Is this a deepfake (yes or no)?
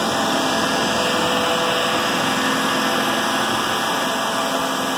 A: no